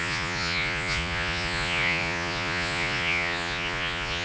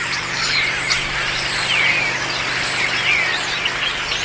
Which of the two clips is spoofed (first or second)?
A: first